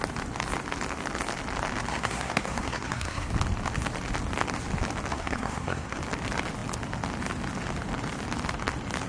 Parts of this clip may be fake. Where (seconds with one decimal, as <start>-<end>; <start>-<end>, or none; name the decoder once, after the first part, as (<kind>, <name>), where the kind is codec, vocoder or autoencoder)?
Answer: 1.9-3.3 (codec, SNAC); 5.1-6.0